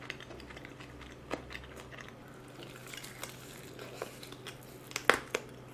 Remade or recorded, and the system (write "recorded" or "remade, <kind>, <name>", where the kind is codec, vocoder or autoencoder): recorded